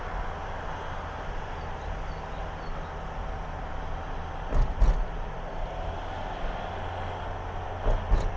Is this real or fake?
real